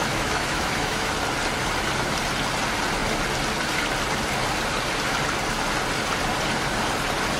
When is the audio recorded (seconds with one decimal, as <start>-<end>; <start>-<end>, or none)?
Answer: 1.1-7.4